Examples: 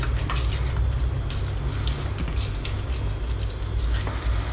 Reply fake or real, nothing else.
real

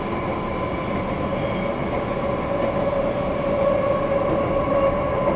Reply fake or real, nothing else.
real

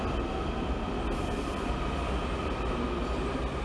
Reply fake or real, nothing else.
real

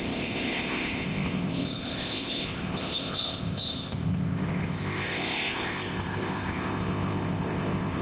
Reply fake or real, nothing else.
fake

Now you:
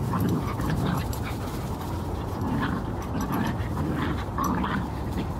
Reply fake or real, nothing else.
fake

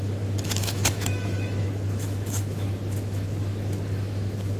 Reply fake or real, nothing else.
fake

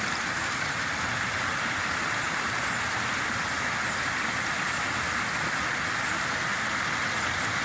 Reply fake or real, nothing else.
real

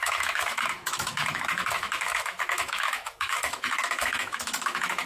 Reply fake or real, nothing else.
fake